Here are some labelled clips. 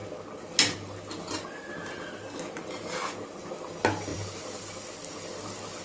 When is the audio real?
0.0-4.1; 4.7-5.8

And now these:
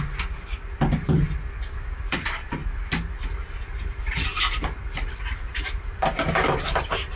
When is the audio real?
2.6-3.8

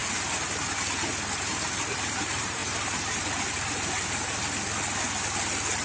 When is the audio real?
0.0-1.4; 4.4-5.8

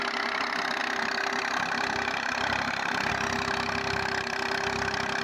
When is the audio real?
0.0-0.8; 3.1-5.2

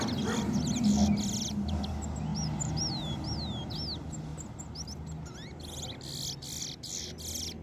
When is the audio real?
0.0-2.3; 2.9-7.6

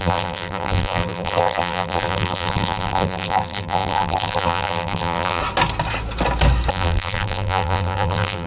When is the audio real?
5.4-6.7

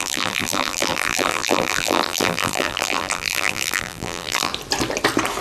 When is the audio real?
4.5-5.4

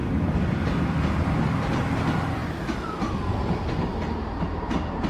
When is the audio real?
1.1-5.1